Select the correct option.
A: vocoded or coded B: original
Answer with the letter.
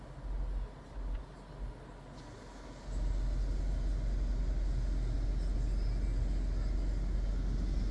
B